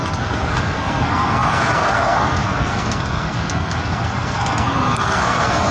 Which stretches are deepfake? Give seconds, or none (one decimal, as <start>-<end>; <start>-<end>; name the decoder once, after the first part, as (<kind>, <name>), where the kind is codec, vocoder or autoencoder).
0.0-5.7 (codec, SNAC)